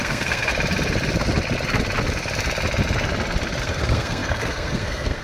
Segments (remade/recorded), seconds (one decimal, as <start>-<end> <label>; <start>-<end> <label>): 0.0-0.5 remade; 0.5-3.6 recorded; 3.6-5.2 remade